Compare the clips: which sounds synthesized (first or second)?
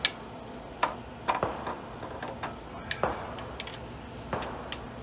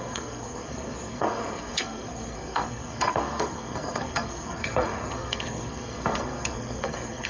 second